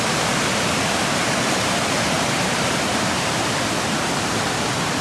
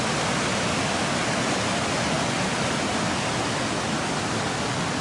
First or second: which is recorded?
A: second